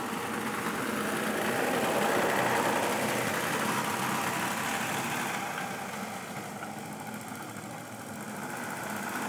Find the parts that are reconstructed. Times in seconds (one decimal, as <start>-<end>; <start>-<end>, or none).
none

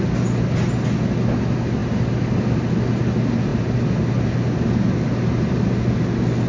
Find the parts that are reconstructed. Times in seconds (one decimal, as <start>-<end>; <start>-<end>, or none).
none

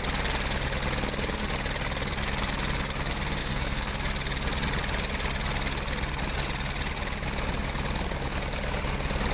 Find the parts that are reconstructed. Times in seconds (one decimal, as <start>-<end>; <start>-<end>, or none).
3.4-3.9